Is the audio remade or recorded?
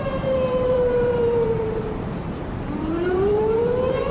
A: remade